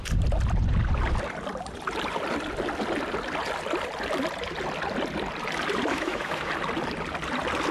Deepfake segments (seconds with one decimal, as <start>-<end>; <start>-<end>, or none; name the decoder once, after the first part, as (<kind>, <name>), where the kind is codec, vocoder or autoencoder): 5.9-6.5 (autoencoder, DAC-VAE)